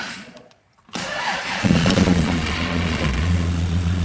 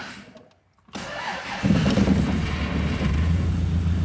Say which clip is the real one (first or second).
second